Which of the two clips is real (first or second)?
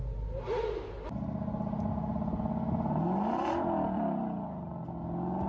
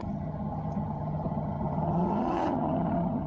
first